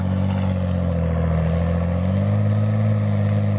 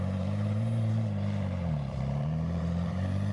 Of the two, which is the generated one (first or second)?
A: second